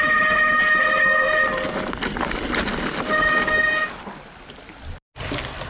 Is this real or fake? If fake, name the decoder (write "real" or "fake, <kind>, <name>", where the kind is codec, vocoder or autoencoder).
real